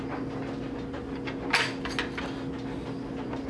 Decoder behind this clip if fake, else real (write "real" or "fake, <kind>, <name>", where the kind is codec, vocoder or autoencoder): real